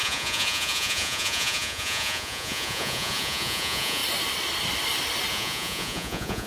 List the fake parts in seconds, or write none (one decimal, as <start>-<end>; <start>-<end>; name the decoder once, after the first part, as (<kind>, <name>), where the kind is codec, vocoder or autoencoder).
0.0-4.0 (vocoder, Vocos); 5.3-6.5